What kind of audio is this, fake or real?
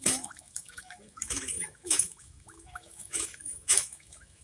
fake